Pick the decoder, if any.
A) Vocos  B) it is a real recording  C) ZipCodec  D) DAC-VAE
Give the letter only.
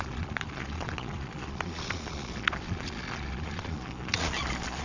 A